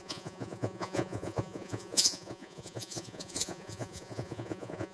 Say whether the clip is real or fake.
fake